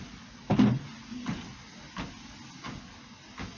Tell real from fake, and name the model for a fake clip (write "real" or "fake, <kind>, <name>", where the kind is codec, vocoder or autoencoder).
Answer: real